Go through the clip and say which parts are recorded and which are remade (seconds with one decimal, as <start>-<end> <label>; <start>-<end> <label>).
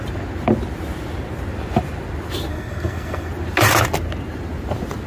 0.0-2.5 recorded; 2.5-3.3 remade; 3.3-5.1 recorded